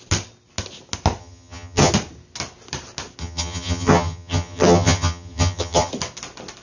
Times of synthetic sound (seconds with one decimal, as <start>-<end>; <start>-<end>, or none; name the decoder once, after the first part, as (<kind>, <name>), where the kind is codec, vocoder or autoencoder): 1.2-1.9 (vocoder, HiFi-GAN); 3.2-5.9